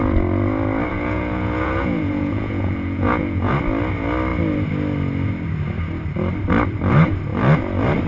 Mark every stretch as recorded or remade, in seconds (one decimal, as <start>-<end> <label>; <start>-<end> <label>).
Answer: 0.0-0.9 recorded; 0.9-3.5 remade; 3.5-8.1 recorded